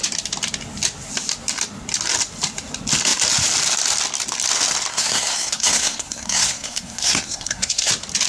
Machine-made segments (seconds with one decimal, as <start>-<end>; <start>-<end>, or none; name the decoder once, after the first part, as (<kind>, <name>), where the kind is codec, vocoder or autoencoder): 4.9-7.9 (codec, SNAC)